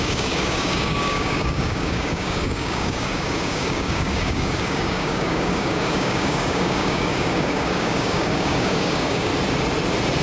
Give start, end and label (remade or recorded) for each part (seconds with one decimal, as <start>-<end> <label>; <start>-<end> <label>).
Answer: 0.0-9.3 remade; 9.3-10.2 recorded